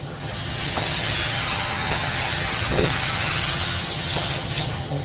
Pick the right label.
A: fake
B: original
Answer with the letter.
A